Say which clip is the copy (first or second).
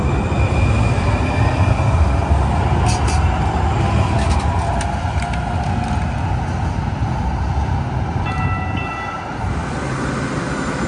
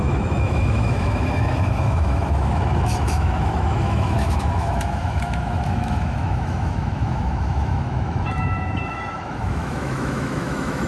second